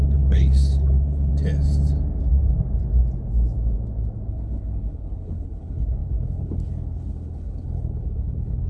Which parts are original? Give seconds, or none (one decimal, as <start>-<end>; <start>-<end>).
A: 1.3-4.3